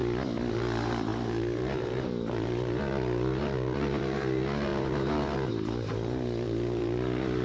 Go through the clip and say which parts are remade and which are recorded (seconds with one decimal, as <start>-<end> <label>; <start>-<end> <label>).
0.0-0.5 recorded; 0.5-7.4 remade

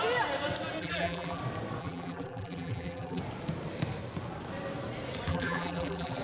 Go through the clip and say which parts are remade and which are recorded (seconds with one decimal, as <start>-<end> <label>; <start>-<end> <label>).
0.0-0.8 recorded; 0.8-1.4 remade; 1.4-1.8 recorded; 1.8-3.2 remade; 3.2-5.3 recorded; 5.3-6.2 remade

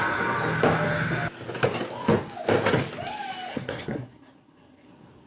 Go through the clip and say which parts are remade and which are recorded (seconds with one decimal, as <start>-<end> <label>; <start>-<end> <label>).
0.0-3.5 recorded; 3.5-5.3 remade

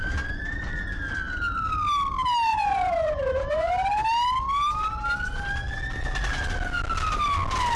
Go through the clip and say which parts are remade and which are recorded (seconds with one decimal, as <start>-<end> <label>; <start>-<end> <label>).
0.0-2.5 recorded; 2.5-3.7 remade; 3.7-7.8 recorded

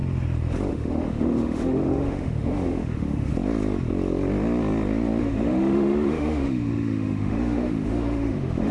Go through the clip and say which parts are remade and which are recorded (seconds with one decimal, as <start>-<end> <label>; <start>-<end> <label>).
0.0-0.7 recorded; 0.7-3.3 remade; 3.3-5.2 recorded; 5.2-8.7 remade

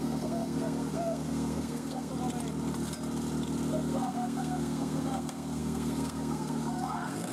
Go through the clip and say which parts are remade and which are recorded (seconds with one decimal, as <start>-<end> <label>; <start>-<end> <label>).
0.0-2.1 remade; 2.1-3.7 recorded; 3.7-7.3 remade

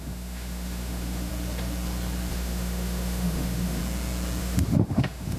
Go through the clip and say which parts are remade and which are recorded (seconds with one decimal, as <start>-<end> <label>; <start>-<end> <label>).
0.0-1.3 remade; 1.3-2.3 recorded; 2.3-3.8 remade; 3.8-4.4 recorded; 4.4-5.4 remade

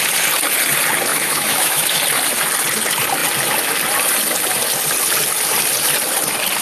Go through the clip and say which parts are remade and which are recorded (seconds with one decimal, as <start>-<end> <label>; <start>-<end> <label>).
0.0-1.1 recorded; 1.1-2.0 remade; 2.0-6.6 recorded